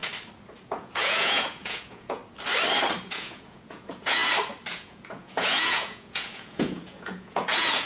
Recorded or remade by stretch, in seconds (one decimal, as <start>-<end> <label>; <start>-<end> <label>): 0.0-0.6 recorded; 0.6-2.2 remade; 2.2-3.0 recorded; 3.0-4.2 remade; 4.2-4.7 recorded; 4.7-7.9 remade